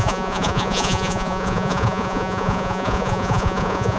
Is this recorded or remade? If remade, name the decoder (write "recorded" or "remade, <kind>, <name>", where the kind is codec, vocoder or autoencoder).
remade, vocoder, Vocos